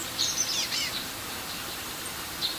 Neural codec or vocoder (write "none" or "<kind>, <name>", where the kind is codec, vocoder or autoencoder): vocoder, BigVGAN v2